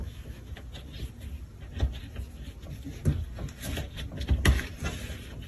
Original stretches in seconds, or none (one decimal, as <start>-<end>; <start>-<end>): 0.5-5.5